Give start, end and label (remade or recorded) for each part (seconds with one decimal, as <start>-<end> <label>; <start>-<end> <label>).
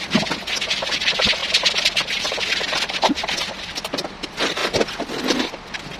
0.0-6.0 recorded